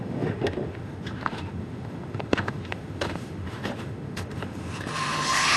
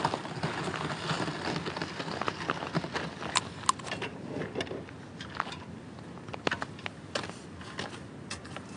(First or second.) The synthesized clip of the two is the first